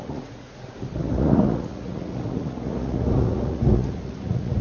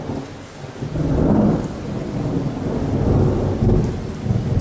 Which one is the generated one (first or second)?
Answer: first